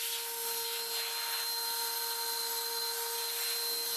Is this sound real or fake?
real